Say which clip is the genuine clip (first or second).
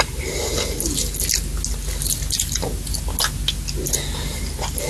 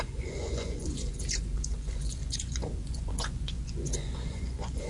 first